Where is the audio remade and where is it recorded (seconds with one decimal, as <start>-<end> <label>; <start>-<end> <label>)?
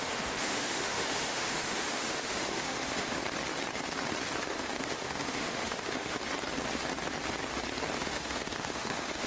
0.0-3.2 remade; 3.2-4.4 recorded; 4.4-6.2 remade; 6.2-8.0 recorded; 8.0-9.3 remade